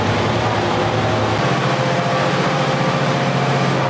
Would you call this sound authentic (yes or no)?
yes